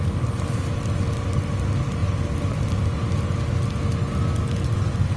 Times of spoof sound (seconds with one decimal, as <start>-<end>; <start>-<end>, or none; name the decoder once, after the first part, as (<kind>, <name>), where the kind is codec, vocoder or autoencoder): none